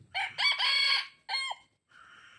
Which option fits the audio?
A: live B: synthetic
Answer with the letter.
A